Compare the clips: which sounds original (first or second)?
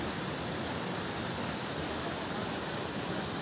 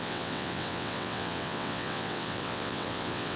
first